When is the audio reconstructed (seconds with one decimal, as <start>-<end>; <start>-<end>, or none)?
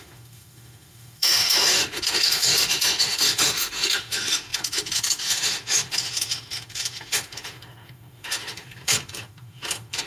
0.0-10.1